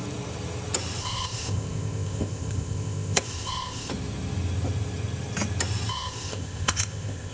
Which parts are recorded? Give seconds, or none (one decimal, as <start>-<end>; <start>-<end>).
0.0-1.0; 3.9-5.9